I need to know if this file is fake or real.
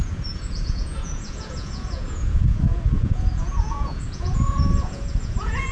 fake